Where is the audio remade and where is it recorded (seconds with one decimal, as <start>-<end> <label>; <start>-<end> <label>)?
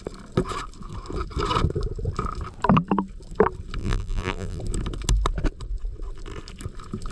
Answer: 0.0-3.8 recorded; 3.8-4.6 remade; 4.6-7.1 recorded